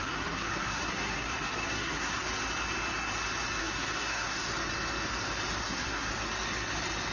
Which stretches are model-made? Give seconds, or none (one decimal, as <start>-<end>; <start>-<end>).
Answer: 0.0-2.2; 3.6-4.5; 5.6-6.1